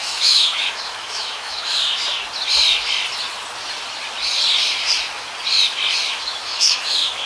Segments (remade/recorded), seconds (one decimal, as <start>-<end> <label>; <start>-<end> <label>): 0.0-1.7 remade; 1.7-6.1 recorded; 6.1-7.3 remade